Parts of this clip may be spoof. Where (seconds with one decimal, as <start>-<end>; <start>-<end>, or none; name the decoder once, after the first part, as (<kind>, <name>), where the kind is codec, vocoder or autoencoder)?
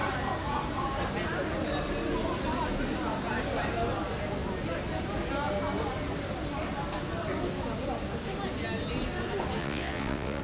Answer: 9.6-10.4 (vocoder, WaveNeXt)